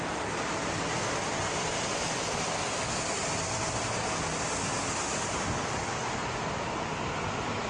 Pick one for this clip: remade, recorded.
recorded